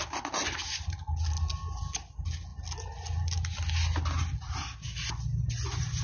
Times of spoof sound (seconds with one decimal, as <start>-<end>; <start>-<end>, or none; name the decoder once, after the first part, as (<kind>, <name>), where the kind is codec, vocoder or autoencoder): none